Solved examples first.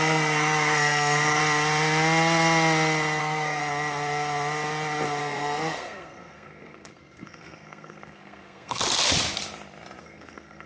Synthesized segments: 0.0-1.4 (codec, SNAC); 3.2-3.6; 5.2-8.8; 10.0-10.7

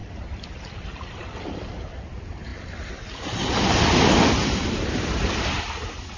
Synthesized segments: none

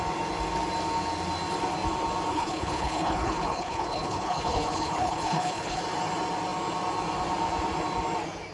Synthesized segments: 2.3-5.8 (codec, HILCodec)

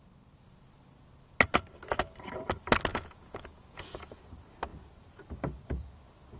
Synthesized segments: 2.9-4.2 (vocoder, Vocos)

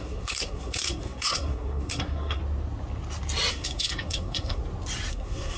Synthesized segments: 0.0-2.4 (codec, SNAC); 3.5-4.6; 5.1-5.6

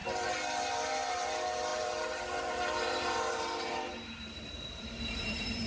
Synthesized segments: 1.1-5.7 (vocoder, BigVGAN v2)

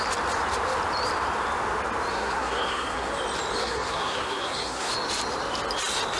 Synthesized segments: 2.1-3.1 (codec, SNAC); 3.6-4.9

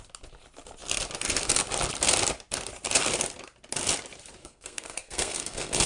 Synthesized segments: 4.4-5.9 (codec, SNAC)